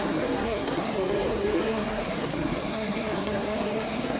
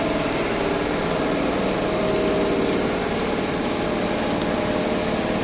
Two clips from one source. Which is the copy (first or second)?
first